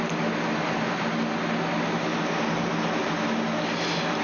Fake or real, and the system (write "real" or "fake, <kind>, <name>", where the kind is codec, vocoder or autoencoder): real